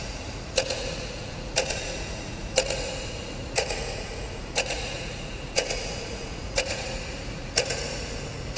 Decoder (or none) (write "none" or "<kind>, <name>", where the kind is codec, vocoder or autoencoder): vocoder, Vocos